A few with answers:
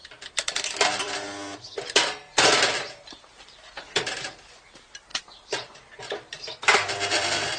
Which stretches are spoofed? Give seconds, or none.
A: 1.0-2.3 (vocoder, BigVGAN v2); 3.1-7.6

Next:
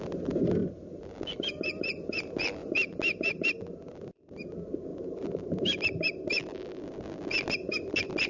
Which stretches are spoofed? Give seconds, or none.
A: 2.6-3.8 (vocoder, BigVGAN v2); 4.9-5.8

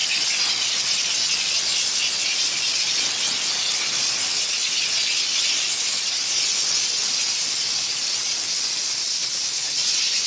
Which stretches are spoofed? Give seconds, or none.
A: none

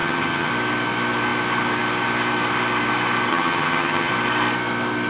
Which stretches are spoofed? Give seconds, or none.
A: 0.0-0.5 (vocoder, HiFi-GAN); 3.3-4.1

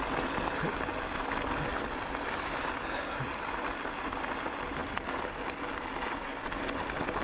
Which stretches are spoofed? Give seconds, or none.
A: none